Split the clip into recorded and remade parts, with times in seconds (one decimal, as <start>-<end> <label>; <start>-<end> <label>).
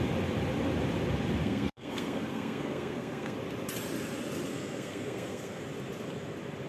0.0-1.4 recorded; 1.4-3.4 remade; 3.4-4.5 recorded; 4.5-5.6 remade; 5.6-6.7 recorded